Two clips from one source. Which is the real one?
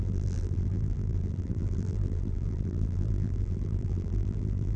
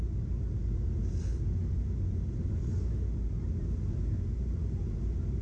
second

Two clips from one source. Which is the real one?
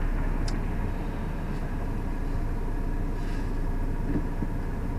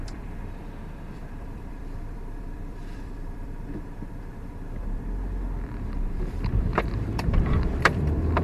first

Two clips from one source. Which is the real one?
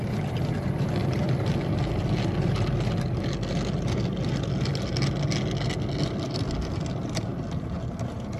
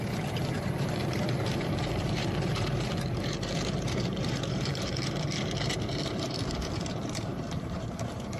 first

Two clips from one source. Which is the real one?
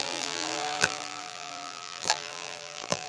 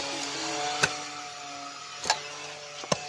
second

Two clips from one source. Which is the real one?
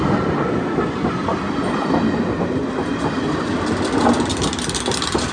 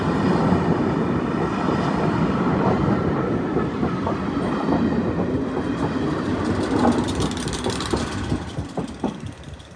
first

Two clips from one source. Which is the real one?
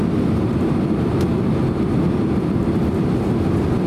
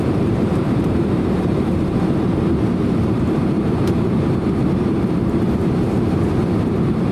first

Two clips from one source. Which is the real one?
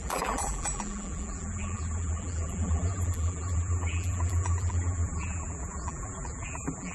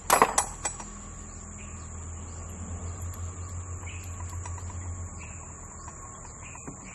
second